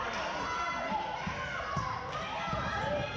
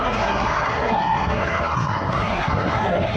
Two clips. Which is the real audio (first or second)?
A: first